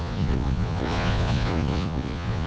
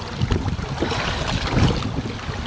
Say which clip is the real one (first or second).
second